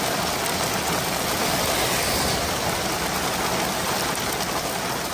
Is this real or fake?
real